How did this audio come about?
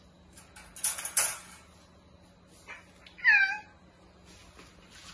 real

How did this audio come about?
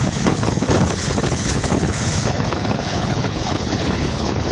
fake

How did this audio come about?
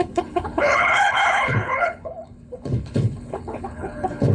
fake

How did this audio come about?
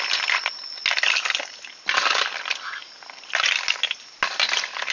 real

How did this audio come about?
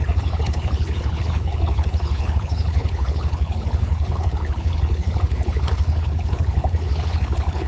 fake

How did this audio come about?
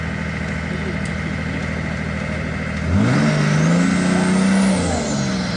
real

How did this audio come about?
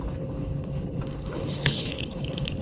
fake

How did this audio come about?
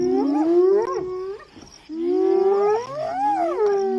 real